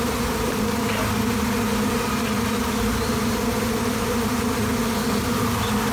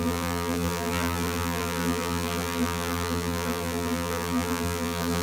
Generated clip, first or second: second